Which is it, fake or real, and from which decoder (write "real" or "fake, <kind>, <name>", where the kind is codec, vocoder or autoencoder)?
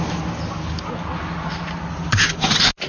real